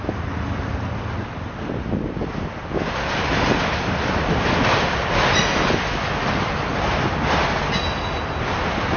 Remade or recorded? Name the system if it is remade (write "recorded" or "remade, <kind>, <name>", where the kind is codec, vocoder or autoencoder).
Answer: recorded